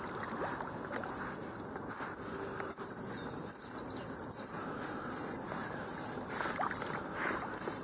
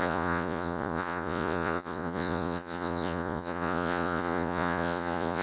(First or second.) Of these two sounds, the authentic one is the first